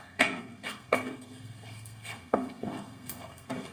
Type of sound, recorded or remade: remade